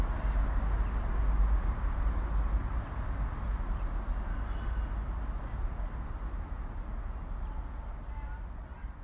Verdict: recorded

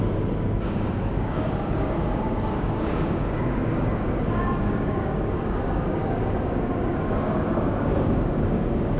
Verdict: remade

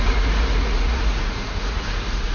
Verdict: remade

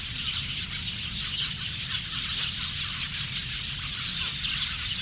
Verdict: recorded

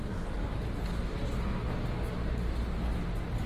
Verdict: recorded